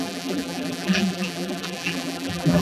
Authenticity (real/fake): fake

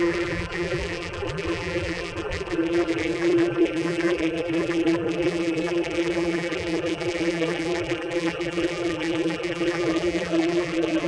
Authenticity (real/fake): fake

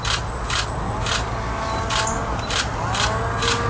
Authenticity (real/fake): real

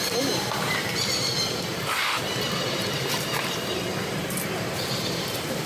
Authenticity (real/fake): fake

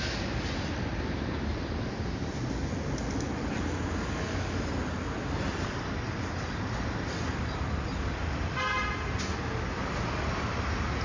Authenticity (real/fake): real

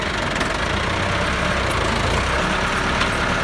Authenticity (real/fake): real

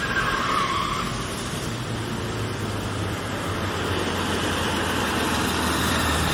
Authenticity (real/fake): fake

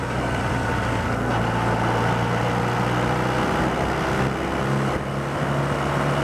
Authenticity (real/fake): real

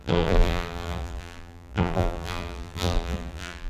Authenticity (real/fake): fake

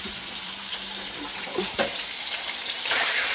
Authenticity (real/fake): fake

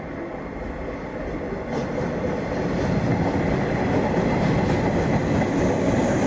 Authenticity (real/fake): real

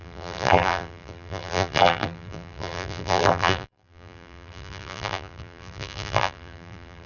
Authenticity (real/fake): fake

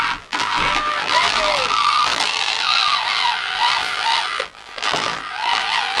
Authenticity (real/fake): fake